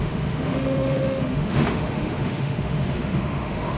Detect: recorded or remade remade